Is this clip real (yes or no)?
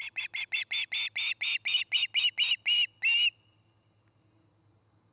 yes